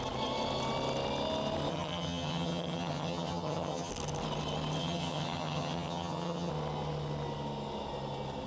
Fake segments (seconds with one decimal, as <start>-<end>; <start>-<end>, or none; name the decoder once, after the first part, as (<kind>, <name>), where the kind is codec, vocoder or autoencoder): 1.7-3.9 (vocoder, HiFi-GAN); 4.8-6.5